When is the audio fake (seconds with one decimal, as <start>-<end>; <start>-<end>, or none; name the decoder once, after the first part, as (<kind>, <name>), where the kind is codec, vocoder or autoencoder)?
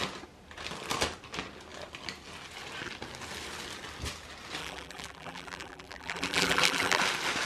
4.6-7.0 (vocoder, BigVGAN v2)